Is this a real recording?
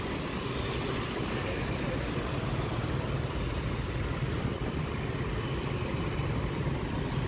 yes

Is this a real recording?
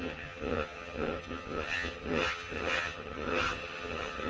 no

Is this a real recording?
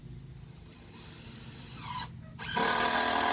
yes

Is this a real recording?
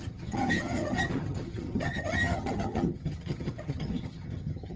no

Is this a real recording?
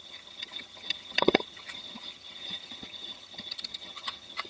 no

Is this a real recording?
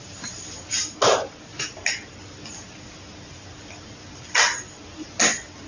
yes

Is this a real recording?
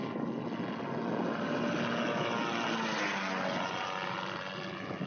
yes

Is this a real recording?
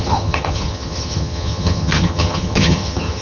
no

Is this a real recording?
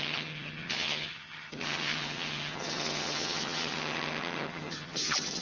no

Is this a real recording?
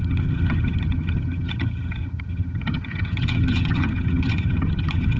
no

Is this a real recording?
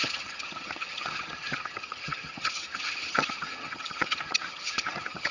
no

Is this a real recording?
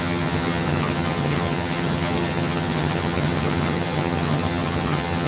no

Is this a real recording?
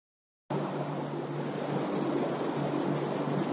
yes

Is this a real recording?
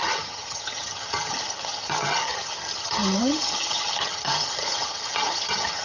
no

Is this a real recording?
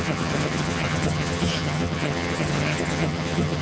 no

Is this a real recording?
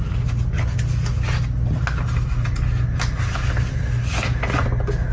yes